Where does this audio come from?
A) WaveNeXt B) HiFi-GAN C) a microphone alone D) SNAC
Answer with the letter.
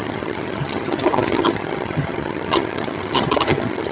B